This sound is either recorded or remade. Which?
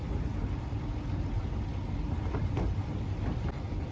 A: recorded